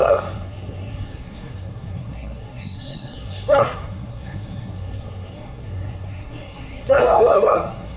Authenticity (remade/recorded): remade